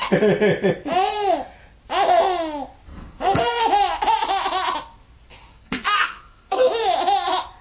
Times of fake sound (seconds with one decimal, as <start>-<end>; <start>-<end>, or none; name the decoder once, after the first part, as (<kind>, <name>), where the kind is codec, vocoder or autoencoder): 2.9-3.6 (codec, SNAC); 5.5-6.7